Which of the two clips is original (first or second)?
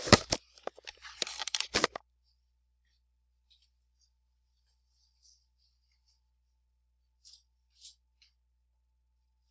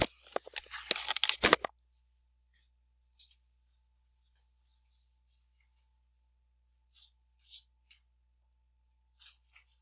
second